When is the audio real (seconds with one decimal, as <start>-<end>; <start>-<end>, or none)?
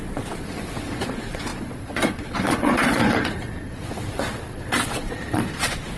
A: none